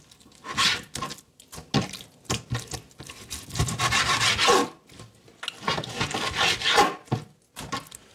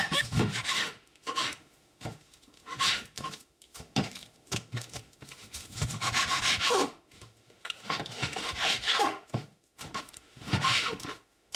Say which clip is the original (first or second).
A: first